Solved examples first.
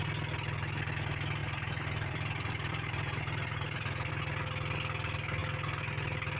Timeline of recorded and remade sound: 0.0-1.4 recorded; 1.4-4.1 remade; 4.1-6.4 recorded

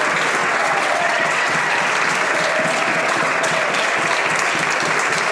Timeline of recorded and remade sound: 0.0-0.4 recorded; 0.4-1.6 remade; 1.6-2.9 recorded; 2.9-3.6 remade; 3.6-5.3 recorded

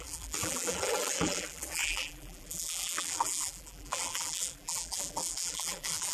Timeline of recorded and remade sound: 0.0-6.1 remade

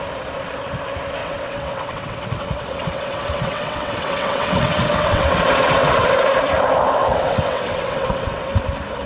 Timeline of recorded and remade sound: 0.0-1.2 recorded; 1.2-6.1 remade; 6.1-7.0 recorded; 7.0-8.5 remade; 8.5-9.1 recorded

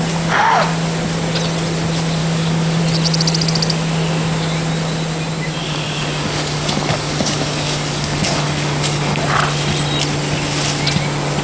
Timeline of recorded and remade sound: 0.0-2.2 recorded; 2.2-2.8 remade; 2.8-5.6 recorded; 5.6-9.2 remade; 9.2-11.4 recorded

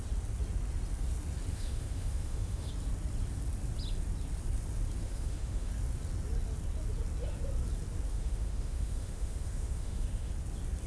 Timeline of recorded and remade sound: 0.0-1.5 recorded; 1.5-2.7 remade; 2.7-5.0 recorded; 5.0-5.7 remade; 5.7-8.1 recorded; 8.1-10.3 remade; 10.3-10.9 recorded